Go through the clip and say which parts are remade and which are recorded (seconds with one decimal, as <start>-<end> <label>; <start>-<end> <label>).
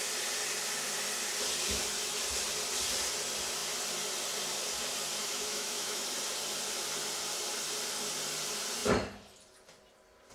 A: 0.0-5.2 recorded; 5.2-6.0 remade; 6.0-10.3 recorded